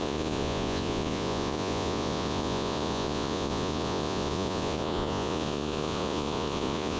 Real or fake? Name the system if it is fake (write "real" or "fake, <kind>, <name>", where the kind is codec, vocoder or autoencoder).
fake, vocoder, Vocos